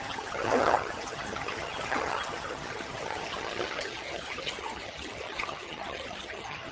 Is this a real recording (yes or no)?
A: no